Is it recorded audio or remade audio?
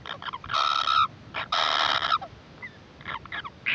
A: recorded